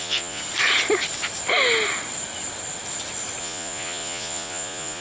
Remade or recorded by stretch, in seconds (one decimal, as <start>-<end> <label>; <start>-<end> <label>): 0.0-0.4 remade; 0.4-3.4 recorded; 3.4-5.0 remade